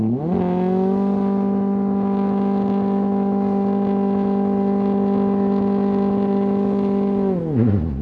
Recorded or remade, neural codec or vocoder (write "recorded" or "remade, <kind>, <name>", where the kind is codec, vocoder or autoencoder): recorded